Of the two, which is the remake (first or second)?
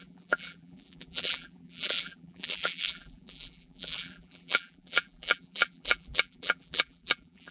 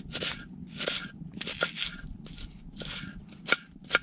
first